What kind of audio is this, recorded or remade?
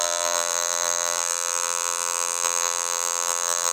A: remade